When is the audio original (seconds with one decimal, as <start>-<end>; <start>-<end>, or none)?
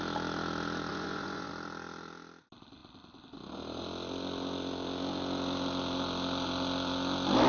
0.0-0.9; 1.5-7.5